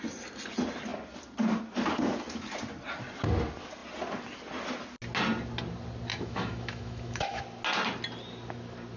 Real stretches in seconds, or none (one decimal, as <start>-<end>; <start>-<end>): 0.0-6.1; 7.4-9.0